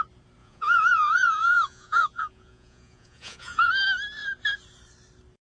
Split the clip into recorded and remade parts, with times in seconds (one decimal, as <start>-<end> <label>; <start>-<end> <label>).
0.0-0.4 recorded; 0.4-3.7 remade; 3.7-5.5 recorded